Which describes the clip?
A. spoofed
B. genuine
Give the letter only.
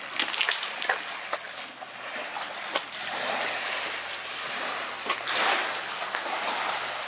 B